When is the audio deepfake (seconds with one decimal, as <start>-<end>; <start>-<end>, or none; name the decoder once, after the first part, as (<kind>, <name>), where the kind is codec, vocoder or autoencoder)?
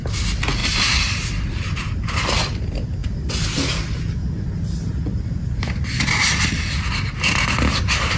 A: 0.6-2.4 (vocoder, BigVGAN v2)